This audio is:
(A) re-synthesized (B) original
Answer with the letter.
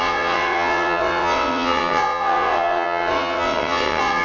A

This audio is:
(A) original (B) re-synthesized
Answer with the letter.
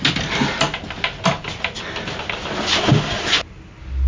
A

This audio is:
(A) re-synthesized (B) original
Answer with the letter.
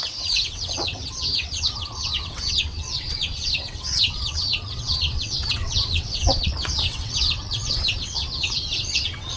A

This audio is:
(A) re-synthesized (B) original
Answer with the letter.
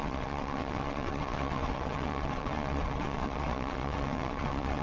A